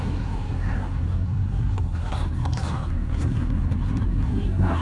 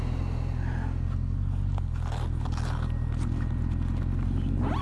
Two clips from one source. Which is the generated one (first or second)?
first